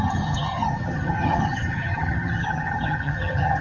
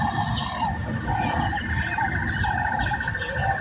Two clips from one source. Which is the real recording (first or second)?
second